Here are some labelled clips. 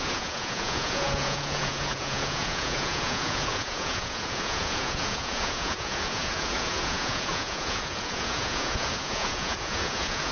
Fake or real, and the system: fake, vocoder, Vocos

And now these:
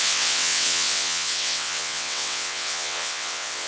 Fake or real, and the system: fake, vocoder, WaveNeXt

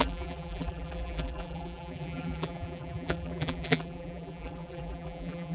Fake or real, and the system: fake, vocoder, BigVGAN v2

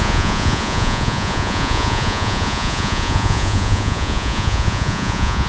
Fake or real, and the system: fake, vocoder, Vocos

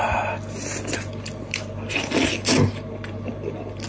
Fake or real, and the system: real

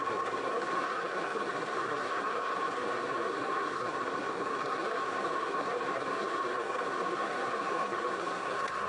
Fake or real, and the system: fake, codec, SNAC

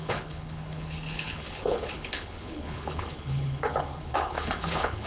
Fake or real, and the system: fake, codec, HILCodec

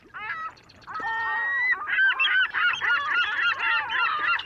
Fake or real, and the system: real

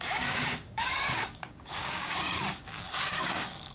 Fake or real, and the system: fake, codec, DAC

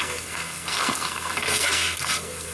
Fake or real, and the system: fake, codec, SNAC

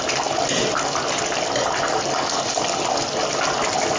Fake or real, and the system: real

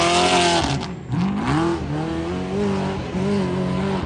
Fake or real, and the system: real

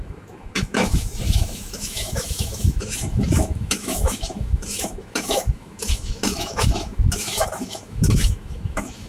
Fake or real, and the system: fake, autoencoder, DAC-VAE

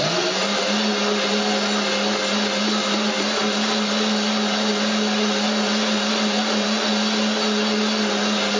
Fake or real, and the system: real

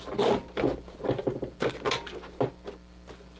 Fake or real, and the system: real